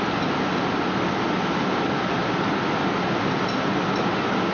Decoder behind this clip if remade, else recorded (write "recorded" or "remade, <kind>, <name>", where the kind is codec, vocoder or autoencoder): recorded